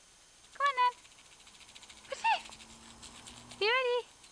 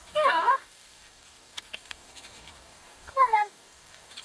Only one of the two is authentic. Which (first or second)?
first